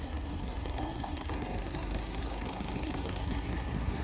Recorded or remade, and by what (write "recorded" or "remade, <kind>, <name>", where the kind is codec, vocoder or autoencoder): remade, codec, SNAC